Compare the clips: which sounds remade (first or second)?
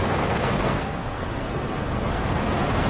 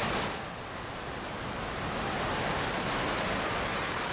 first